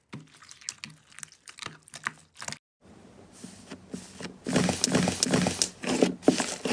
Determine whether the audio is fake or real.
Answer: real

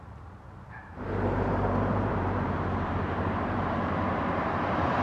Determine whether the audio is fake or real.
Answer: fake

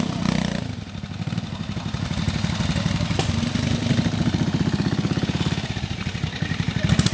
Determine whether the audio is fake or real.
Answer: real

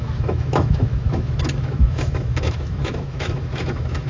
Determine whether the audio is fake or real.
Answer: fake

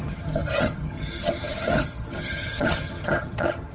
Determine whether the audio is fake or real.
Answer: fake